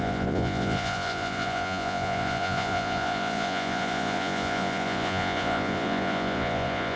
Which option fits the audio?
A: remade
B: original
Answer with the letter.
A